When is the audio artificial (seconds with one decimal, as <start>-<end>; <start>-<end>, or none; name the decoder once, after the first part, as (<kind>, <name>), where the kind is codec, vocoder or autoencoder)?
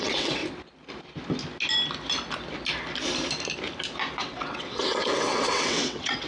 0.0-0.4 (vocoder, WaveNeXt); 4.2-6.3